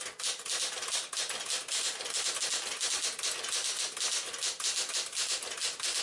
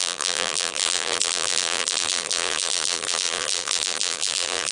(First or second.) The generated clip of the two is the second